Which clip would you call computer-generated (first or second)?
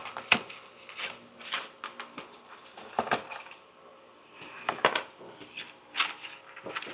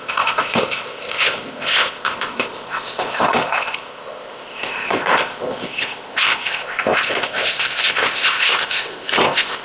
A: second